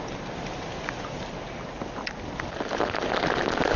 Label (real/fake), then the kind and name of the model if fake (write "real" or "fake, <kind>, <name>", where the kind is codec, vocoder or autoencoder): real